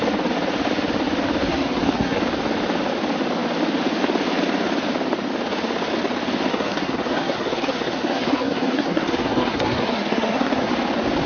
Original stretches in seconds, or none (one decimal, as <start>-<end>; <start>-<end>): 0.0-1.4; 2.2-6.5; 10.7-11.3

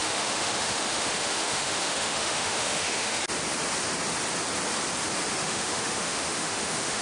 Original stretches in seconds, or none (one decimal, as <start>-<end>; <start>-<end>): 3.2-5.4

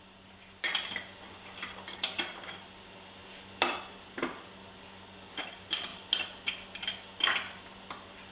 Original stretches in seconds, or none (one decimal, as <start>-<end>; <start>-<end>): 0.0-8.3

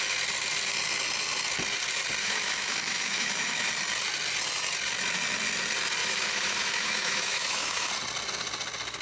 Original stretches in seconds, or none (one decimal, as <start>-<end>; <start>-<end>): 0.0-2.2; 3.7-6.0; 7.9-9.0